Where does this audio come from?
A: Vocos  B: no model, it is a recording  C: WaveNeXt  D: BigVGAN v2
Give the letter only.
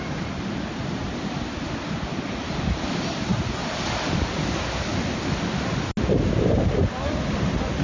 B